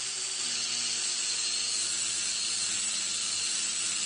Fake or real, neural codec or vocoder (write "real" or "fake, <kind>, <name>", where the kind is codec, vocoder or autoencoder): real